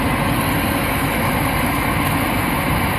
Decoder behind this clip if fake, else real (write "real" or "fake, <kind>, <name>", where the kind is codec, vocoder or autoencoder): real